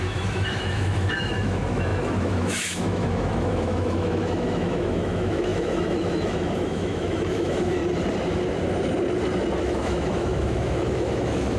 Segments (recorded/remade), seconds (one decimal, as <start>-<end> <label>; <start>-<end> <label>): 0.0-7.8 remade; 7.8-9.6 recorded; 9.6-11.6 remade